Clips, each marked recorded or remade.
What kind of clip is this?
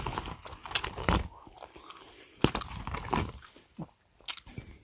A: recorded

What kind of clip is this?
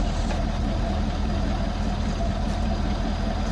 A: recorded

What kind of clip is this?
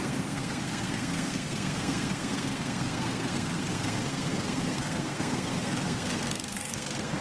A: remade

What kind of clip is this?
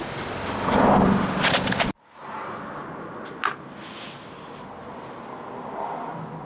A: recorded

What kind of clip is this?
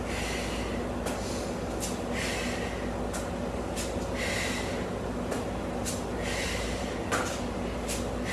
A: recorded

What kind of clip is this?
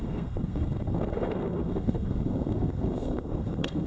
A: remade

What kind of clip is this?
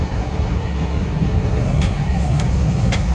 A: remade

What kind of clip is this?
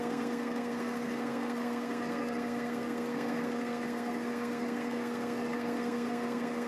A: remade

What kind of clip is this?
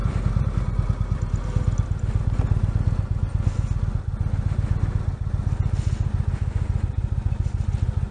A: recorded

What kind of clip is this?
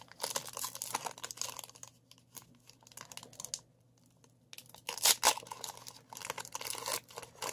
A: recorded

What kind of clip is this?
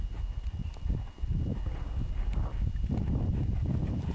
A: recorded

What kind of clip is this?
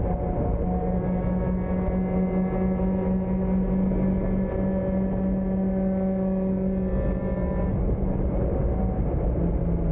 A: recorded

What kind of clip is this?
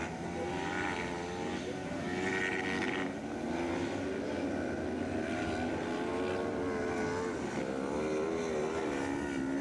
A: recorded